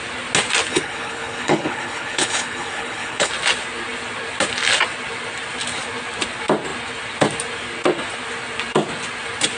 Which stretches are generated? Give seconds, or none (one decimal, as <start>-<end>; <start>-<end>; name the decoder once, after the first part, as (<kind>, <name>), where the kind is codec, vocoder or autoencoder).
0.7-3.3 (codec, HILCodec)